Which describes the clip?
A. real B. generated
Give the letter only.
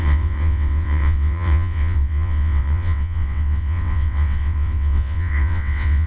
B